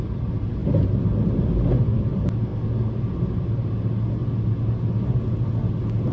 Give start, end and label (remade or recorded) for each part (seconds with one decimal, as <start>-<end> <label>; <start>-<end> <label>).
0.0-6.1 recorded